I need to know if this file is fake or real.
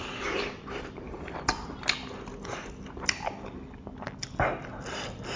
real